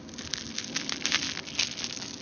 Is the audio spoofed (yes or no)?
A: no